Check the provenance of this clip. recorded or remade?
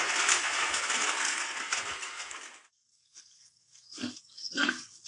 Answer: remade